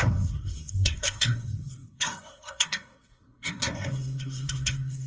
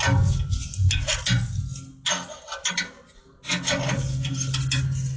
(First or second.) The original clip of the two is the second